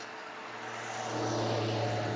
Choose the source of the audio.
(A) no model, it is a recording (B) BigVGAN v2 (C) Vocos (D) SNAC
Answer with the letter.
A